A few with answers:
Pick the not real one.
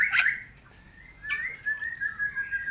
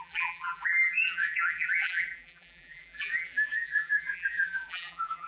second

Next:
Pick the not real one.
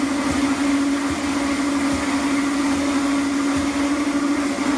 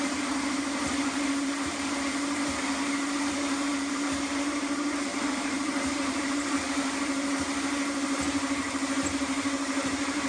second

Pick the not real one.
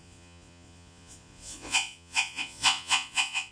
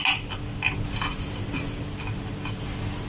first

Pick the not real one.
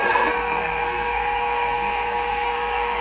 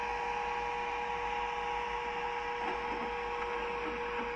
first